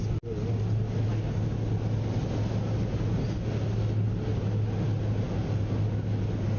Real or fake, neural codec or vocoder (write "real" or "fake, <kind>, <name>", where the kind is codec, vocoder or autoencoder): real